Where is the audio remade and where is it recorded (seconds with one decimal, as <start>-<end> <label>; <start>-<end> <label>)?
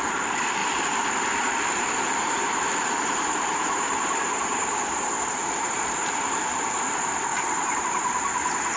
0.0-0.6 remade; 0.6-1.2 recorded; 1.2-7.3 remade; 7.3-7.8 recorded; 7.8-8.8 remade